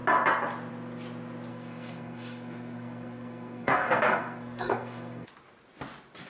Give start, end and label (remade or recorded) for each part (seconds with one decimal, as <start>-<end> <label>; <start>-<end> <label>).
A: 0.0-1.5 recorded; 1.5-5.3 remade; 5.3-6.3 recorded

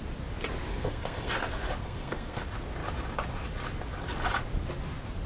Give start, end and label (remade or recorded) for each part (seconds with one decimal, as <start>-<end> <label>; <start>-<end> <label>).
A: 0.0-0.7 recorded; 0.7-1.3 remade; 1.3-1.8 recorded; 1.8-2.4 remade; 2.4-5.3 recorded